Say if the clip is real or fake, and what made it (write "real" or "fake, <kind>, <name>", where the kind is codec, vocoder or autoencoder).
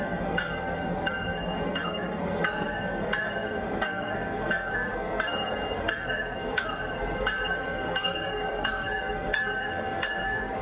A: fake, codec, SNAC